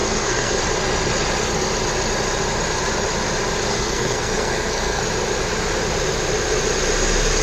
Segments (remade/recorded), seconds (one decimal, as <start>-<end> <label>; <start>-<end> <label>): 0.0-0.6 remade; 0.6-3.7 recorded; 3.7-5.0 remade; 5.0-7.4 recorded